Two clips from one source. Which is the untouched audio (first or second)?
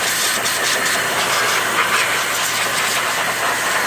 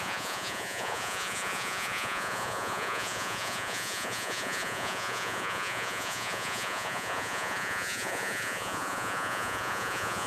first